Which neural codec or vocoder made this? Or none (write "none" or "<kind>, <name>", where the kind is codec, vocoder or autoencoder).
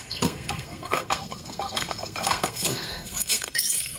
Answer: codec, SNAC